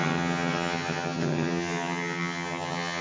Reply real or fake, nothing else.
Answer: fake